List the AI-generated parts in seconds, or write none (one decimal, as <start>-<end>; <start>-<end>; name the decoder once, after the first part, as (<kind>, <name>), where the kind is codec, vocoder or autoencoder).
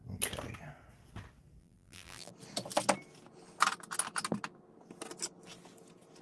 1.6-2.3 (vocoder, BigVGAN v2)